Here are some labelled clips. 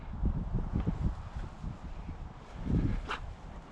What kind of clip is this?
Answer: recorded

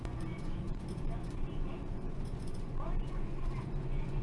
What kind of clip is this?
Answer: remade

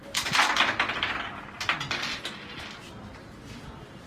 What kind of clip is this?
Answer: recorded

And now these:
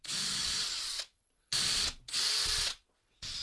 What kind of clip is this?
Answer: remade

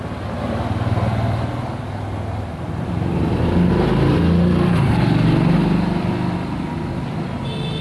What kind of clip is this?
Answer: recorded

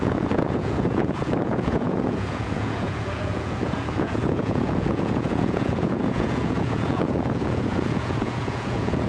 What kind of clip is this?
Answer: remade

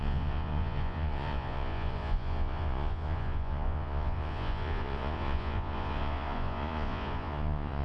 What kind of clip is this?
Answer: remade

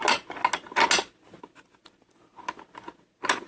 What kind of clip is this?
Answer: recorded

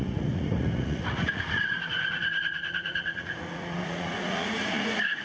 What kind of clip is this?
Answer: remade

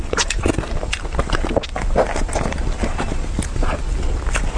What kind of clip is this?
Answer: recorded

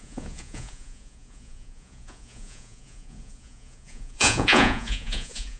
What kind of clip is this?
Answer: remade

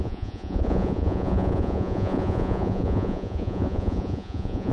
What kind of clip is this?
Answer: remade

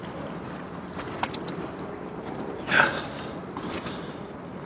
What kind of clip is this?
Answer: recorded